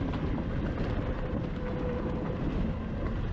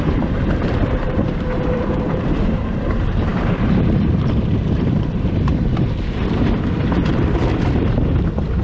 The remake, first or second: second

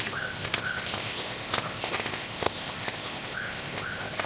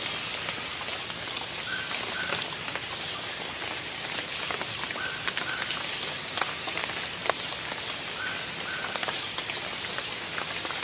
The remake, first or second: first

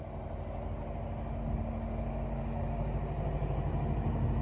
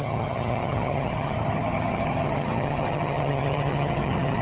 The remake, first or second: second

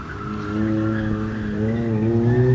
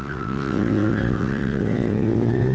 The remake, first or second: second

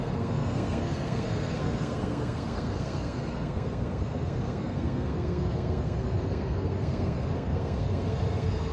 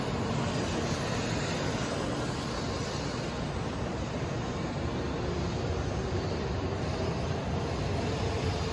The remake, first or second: first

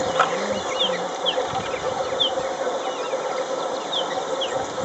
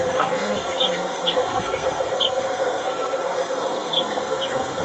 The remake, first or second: second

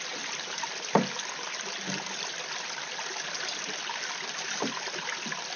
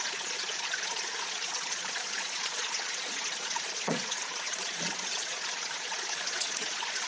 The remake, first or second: second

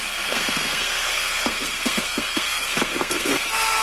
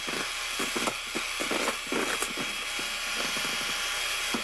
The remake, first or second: first